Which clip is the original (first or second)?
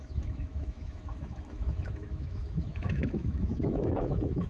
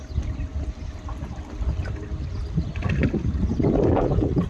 second